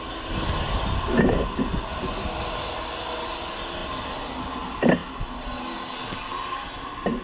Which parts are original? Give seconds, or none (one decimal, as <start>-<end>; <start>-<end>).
0.0-7.2